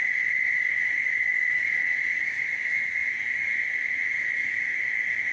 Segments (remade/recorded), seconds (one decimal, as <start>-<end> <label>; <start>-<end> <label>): 0.0-3.0 remade; 3.0-5.3 recorded